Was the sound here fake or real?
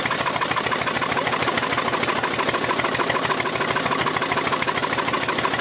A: real